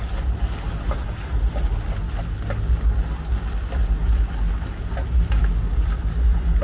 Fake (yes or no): no